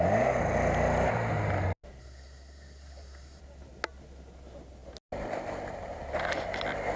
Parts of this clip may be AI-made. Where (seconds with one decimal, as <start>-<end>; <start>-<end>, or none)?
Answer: 2.0-3.4

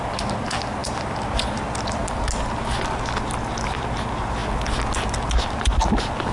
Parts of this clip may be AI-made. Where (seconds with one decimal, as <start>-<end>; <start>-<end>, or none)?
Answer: none